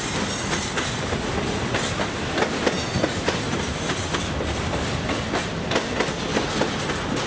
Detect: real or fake real